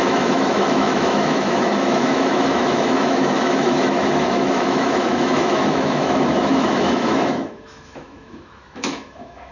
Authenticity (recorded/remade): remade